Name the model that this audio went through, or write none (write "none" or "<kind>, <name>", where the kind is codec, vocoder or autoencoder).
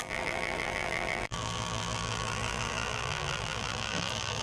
vocoder, BigVGAN v2